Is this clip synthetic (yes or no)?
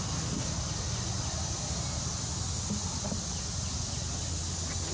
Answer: no